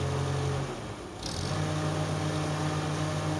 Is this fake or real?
real